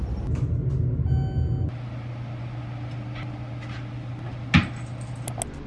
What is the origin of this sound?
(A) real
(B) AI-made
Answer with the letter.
A